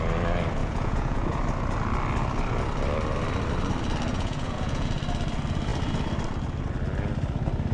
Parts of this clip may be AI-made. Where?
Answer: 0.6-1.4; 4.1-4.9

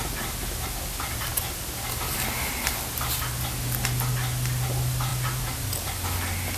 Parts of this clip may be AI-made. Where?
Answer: none

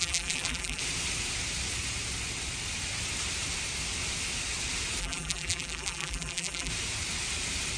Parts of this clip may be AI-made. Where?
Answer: 0.0-0.8; 5.0-6.7

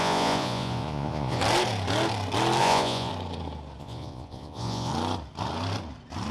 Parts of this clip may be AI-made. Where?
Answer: 0.0-1.4; 2.6-3.1; 3.8-4.9

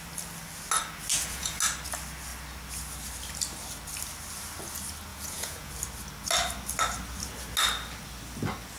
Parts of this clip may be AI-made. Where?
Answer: 1.1-1.6; 5.1-5.7

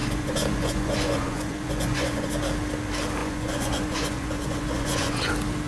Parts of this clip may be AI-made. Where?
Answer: 0.0-2.3; 3.2-5.3

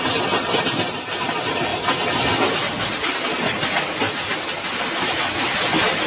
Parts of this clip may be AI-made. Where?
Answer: none

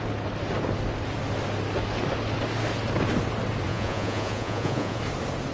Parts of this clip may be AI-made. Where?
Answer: 3.7-5.0